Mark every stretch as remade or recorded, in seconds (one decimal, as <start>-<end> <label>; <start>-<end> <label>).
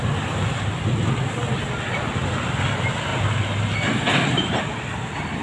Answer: 0.0-5.4 recorded